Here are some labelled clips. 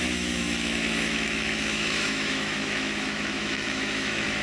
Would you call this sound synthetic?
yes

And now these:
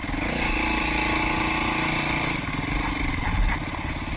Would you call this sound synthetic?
no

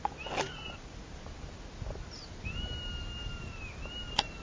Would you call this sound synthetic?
no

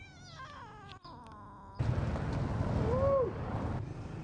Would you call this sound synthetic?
no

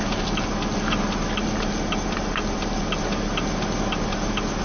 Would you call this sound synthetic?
no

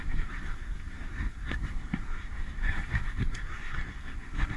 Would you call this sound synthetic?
yes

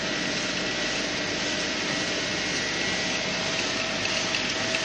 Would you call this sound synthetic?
no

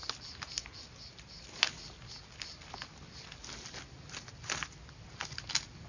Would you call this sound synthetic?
no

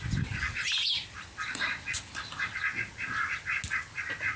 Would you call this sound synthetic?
no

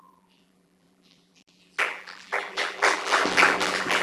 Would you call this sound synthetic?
yes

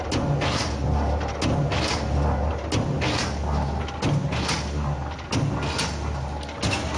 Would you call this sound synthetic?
no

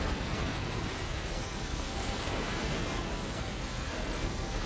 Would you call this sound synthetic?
yes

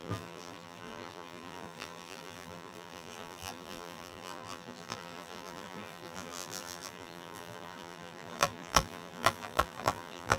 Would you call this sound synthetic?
yes